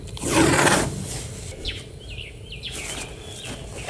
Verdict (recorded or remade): recorded